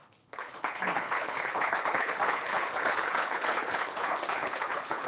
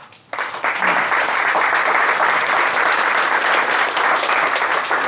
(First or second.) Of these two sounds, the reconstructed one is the first